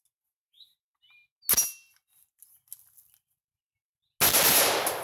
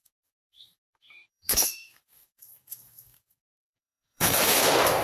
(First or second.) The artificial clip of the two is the second